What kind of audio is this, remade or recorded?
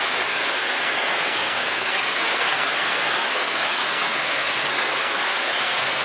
remade